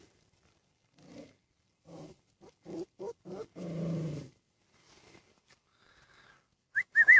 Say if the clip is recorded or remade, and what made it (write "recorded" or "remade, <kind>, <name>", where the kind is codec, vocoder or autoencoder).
remade, vocoder, BigVGAN v2